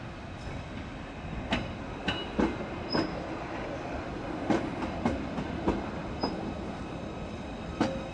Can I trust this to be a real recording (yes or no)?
yes